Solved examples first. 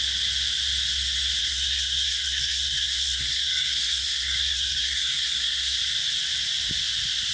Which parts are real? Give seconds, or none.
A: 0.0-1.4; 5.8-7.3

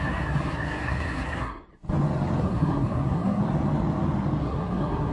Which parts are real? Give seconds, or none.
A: 1.7-2.4; 3.4-4.4

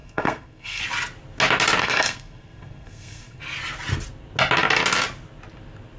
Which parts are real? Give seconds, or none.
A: 0.8-1.8; 3.4-6.0

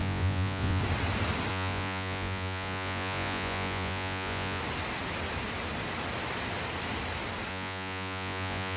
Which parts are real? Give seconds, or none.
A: 0.8-1.5; 4.6-7.5

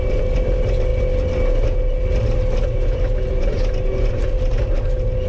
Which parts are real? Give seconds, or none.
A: 0.0-5.3

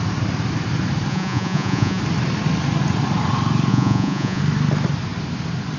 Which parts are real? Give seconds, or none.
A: 0.0-1.1; 2.0-3.7; 4.4-5.8

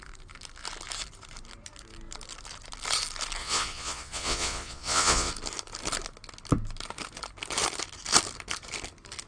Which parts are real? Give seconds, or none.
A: 0.0-3.4; 5.3-9.3